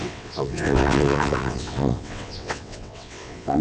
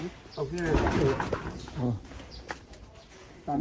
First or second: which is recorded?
second